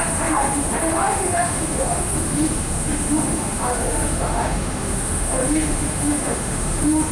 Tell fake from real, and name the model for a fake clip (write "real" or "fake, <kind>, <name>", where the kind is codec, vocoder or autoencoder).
fake, autoencoder, DAC-VAE